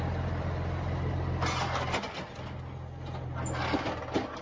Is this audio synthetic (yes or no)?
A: no